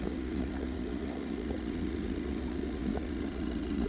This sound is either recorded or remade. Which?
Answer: remade